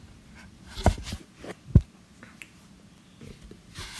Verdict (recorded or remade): recorded